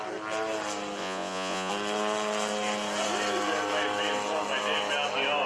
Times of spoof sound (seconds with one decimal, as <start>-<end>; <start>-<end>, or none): 1.0-1.7